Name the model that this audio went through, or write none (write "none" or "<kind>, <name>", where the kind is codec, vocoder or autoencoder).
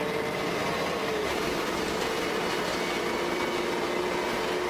none